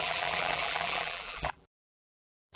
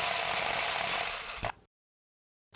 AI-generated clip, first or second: first